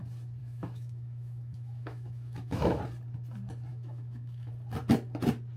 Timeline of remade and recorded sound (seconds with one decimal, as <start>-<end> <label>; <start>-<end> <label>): 0.0-0.4 recorded; 0.4-2.8 remade; 2.8-3.7 recorded; 3.7-4.5 remade; 4.5-5.6 recorded